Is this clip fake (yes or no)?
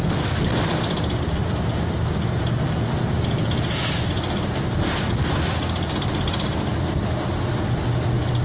no